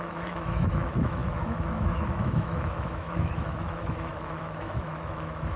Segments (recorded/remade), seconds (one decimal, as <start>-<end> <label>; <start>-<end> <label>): 0.0-5.6 remade